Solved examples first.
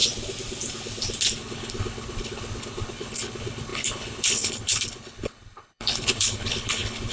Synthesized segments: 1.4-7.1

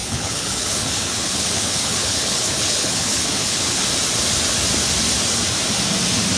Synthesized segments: 0.0-3.8

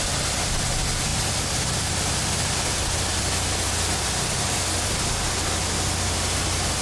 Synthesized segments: none

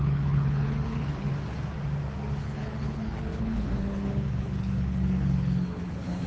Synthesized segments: 0.0-1.3; 2.4-6.3

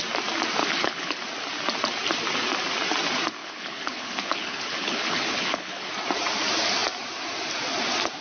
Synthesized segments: 0.6-1.2; 3.4-5.9